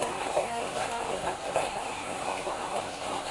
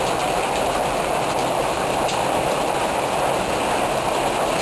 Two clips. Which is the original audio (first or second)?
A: second